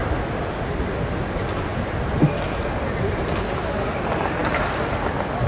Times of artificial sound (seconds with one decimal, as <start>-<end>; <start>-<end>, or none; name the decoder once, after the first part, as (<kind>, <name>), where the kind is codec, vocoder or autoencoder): none